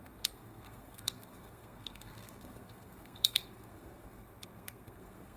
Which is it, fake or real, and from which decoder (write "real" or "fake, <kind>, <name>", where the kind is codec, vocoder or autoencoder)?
fake, codec, SNAC